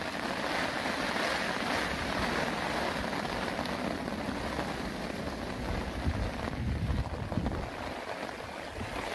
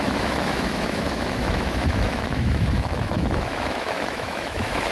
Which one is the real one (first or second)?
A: first